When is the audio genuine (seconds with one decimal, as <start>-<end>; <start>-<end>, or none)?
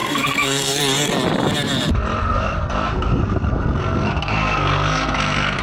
0.8-2.2